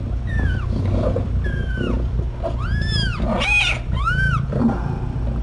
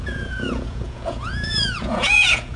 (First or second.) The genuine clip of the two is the first